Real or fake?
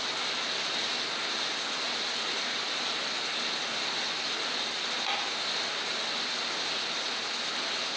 real